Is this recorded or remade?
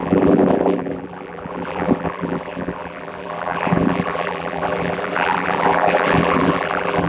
remade